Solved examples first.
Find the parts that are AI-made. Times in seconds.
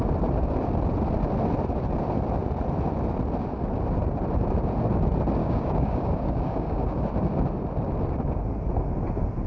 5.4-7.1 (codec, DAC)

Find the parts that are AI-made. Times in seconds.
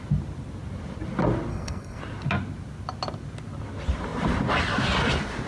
1.5-2.0 (codec, SNAC)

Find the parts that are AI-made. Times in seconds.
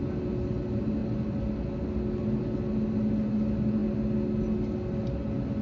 none